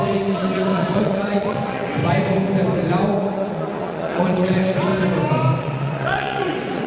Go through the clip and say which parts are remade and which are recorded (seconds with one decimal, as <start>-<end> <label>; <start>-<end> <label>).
0.0-2.0 remade; 2.0-3.1 recorded; 3.1-4.9 remade; 4.9-5.6 recorded; 5.6-6.9 remade